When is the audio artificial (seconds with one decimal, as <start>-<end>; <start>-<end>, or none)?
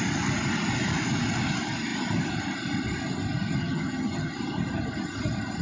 3.6-4.3